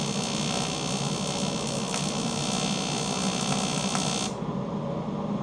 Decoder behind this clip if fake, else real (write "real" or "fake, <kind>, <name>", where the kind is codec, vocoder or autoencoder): real